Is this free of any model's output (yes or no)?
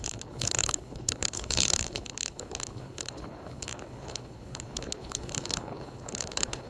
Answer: no